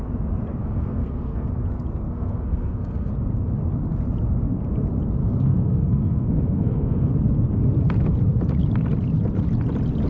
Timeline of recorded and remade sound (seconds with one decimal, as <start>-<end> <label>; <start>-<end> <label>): 0.0-0.6 recorded; 0.6-1.5 remade; 1.5-2.1 recorded; 2.1-3.1 remade; 3.1-5.2 recorded; 5.2-7.1 remade; 7.1-10.1 recorded